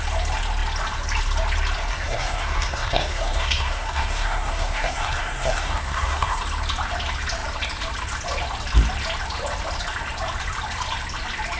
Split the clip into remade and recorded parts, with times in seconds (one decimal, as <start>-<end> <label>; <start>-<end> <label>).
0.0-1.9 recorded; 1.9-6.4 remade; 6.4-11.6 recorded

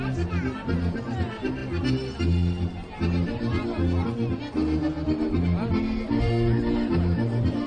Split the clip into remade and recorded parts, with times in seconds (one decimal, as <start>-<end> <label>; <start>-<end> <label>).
0.0-7.7 recorded

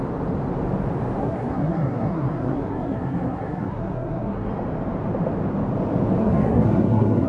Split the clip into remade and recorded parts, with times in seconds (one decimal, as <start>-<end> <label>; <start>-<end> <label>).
0.0-1.2 recorded; 1.2-4.5 remade; 4.5-6.2 recorded; 6.2-7.3 remade

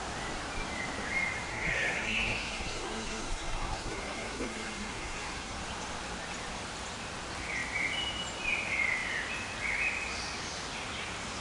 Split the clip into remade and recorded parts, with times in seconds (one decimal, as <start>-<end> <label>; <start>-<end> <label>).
0.0-1.5 recorded; 1.5-5.6 remade; 5.6-11.4 recorded

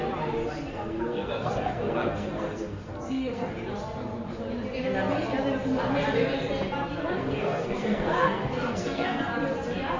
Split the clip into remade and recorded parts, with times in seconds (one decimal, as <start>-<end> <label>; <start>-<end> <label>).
0.0-0.7 recorded; 0.7-3.5 remade; 3.5-7.0 recorded; 7.0-9.4 remade; 9.4-10.0 recorded